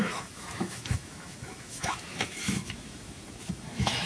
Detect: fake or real fake